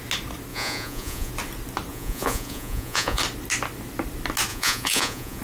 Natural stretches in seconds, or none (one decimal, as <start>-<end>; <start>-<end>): 0.0-0.5; 1.3-1.9; 3.2-4.5